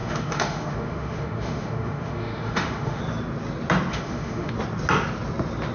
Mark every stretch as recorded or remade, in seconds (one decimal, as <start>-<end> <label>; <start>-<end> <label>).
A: 0.0-3.0 remade; 3.0-3.9 recorded; 3.9-4.5 remade; 4.5-5.7 recorded